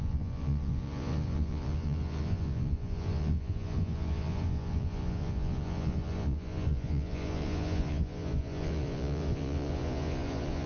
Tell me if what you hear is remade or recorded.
remade